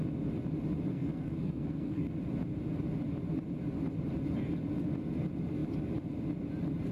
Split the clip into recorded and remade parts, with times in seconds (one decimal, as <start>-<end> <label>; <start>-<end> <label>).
0.0-0.9 recorded; 0.9-2.1 remade; 2.1-6.9 recorded